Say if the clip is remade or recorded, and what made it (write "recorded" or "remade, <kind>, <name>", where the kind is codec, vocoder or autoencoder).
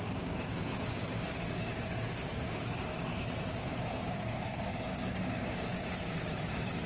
remade, codec, DAC